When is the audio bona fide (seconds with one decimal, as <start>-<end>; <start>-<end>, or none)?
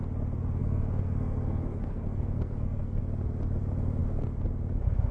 0.0-0.6; 3.0-5.1